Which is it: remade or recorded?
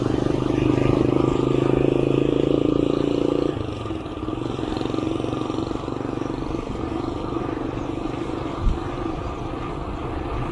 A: recorded